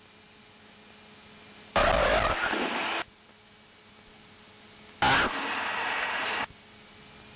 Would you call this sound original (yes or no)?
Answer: yes